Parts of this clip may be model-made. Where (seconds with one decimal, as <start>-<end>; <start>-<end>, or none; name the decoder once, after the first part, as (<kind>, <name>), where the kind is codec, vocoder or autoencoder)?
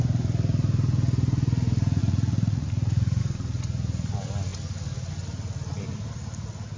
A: 2.0-3.2 (vocoder, Vocos)